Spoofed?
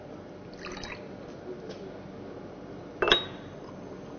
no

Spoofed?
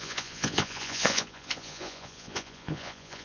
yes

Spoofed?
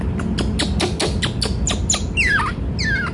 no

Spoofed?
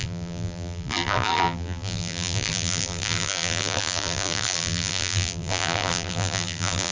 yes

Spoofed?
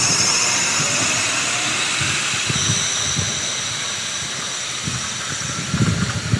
no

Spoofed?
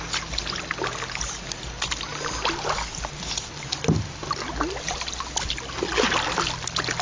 no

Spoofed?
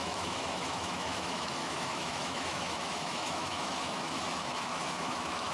yes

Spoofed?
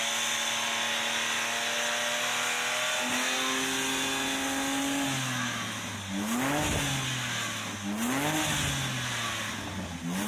no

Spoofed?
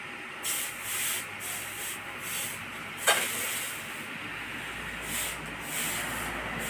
no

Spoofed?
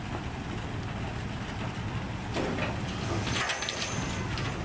no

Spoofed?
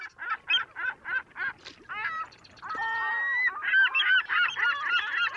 no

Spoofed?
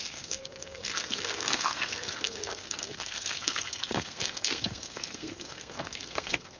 yes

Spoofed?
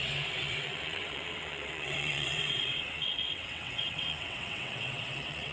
yes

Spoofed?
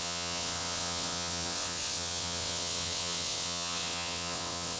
yes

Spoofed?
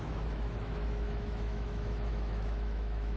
yes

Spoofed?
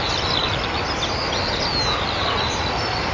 no